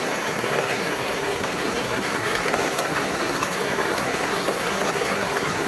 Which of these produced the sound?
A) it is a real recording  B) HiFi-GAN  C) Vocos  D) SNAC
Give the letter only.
D